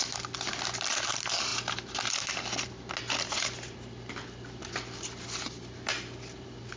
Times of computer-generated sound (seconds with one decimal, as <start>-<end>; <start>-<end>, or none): none